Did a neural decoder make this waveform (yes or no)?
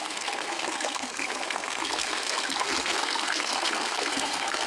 yes